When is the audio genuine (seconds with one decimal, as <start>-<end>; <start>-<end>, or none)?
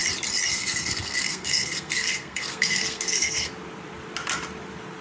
0.0-0.5; 3.5-5.0